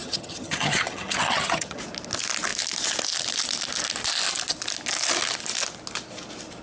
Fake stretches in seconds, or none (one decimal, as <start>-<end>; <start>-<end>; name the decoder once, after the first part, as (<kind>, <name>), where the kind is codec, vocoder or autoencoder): 0.0-1.8 (vocoder, HiFi-GAN)